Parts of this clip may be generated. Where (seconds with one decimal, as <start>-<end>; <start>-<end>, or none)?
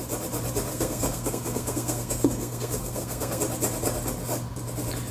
0.7-3.4